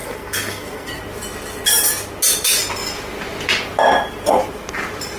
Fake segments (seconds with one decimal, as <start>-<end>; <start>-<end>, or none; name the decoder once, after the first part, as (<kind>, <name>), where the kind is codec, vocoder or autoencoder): 0.0-1.0 (codec, SNAC)